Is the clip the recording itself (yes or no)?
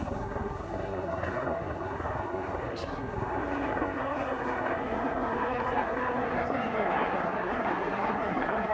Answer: no